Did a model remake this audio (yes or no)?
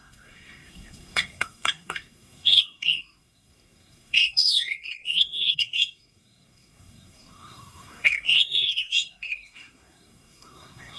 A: yes